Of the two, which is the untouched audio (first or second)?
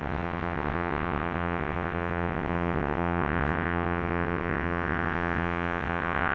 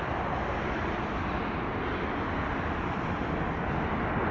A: second